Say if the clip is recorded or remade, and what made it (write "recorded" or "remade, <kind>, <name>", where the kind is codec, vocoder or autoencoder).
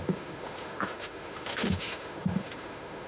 remade, autoencoder, DAC-VAE